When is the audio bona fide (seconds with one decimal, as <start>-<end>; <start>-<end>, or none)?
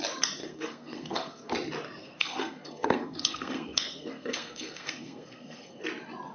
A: 0.0-0.4; 1.5-2.0; 5.8-6.3